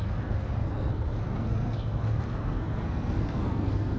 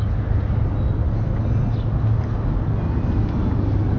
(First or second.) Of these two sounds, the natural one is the second